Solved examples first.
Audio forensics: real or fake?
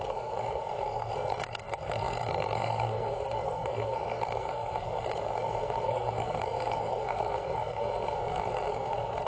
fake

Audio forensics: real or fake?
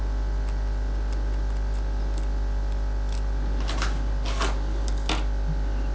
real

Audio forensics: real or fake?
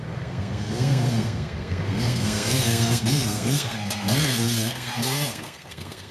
fake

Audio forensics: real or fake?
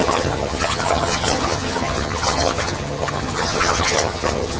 fake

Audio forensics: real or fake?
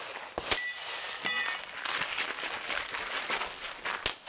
real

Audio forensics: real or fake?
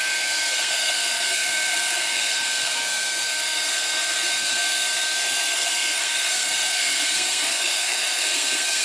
fake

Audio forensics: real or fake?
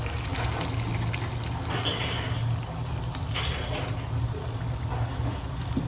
real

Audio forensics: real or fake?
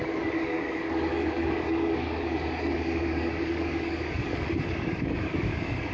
fake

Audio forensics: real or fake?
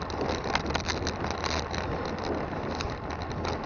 real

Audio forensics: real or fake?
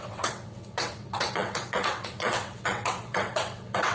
fake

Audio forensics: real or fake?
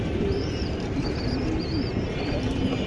fake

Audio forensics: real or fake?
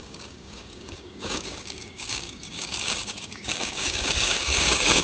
fake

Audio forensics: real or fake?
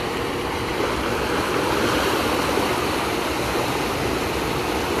real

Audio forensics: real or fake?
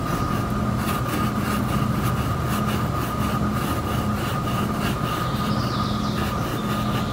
real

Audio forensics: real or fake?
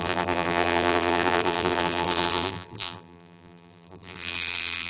fake